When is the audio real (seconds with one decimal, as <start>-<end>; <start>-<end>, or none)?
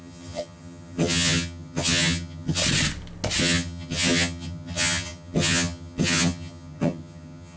2.6-3.4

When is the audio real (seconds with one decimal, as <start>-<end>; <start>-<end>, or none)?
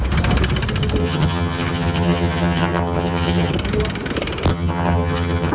0.0-1.0; 3.5-4.5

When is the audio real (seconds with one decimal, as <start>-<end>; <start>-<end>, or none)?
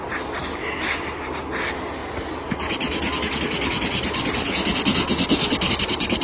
0.0-6.2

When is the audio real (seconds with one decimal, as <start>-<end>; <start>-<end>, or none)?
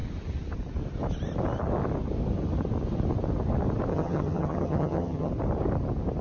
0.0-3.9; 5.3-6.2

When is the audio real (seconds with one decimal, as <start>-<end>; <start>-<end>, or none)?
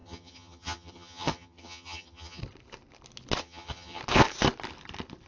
2.4-3.4; 4.0-5.3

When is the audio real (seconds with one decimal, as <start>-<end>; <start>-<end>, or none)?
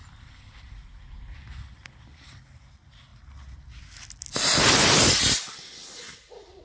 0.0-6.6